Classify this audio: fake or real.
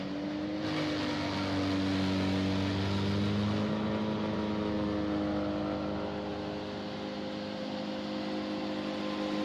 real